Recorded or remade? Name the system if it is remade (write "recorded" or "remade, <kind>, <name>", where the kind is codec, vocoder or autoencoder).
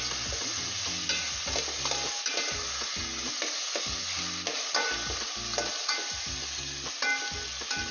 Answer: recorded